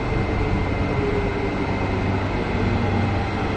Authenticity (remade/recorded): recorded